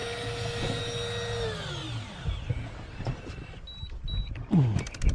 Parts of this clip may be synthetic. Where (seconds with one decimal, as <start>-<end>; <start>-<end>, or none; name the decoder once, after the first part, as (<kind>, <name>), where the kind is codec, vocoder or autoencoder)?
1.8-3.3 (vocoder, BigVGAN v2)